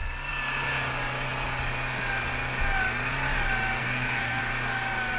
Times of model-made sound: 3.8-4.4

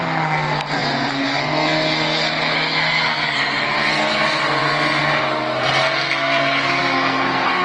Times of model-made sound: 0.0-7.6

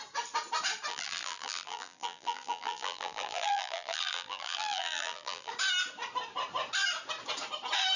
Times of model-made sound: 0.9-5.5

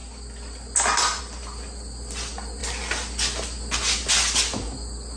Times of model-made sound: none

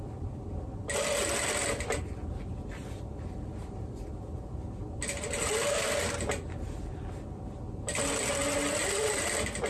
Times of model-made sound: none

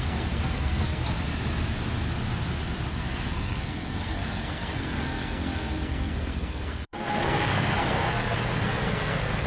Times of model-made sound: 0.0-1.0; 2.9-9.5

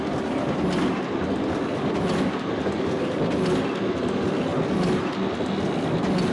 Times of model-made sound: none